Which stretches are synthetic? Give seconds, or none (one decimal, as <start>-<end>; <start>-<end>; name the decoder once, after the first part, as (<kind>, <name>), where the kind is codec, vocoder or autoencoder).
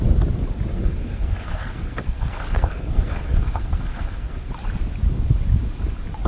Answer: 0.7-4.5 (codec, SNAC)